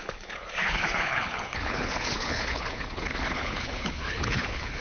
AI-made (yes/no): yes